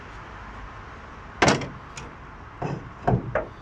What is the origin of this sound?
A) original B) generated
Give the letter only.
A